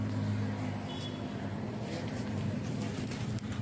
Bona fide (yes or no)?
yes